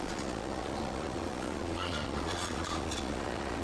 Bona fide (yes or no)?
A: no